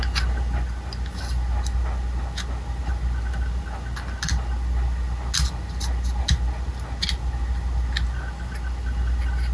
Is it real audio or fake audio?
real